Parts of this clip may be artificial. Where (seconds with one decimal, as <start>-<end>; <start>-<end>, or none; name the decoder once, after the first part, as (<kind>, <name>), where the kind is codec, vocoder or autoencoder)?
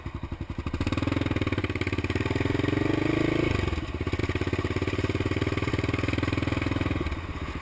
1.6-2.2 (vocoder, BigVGAN v2); 4.2-5.7